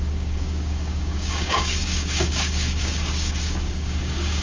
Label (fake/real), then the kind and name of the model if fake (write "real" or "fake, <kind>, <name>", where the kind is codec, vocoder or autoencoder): fake, codec, DAC